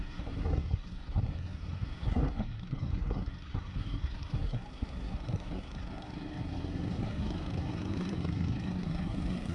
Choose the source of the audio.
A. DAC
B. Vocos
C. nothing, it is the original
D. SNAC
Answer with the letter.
D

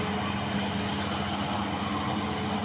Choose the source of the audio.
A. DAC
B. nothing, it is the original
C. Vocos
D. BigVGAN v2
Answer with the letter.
B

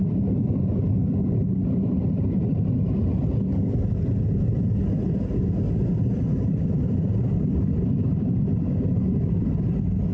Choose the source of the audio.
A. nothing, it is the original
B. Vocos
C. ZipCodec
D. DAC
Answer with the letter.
A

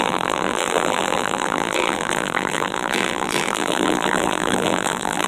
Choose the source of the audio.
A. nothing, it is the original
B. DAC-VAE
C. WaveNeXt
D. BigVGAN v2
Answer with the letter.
D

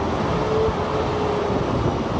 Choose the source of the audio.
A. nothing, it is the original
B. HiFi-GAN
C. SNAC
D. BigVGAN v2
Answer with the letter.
A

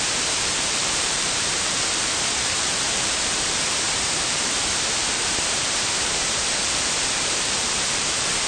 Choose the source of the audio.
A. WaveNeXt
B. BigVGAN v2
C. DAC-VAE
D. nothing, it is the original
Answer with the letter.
B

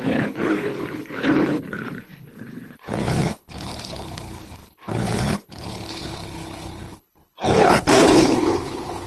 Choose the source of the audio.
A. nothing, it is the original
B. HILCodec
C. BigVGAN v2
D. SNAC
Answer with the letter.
B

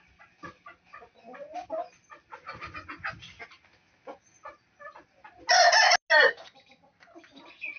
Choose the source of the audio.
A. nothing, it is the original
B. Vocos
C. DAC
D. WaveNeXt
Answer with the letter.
A